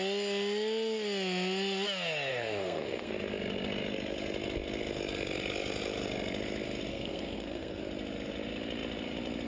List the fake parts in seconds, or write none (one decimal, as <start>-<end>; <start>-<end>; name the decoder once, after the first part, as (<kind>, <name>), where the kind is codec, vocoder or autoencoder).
2.3-3.1 (codec, SNAC); 6.9-7.8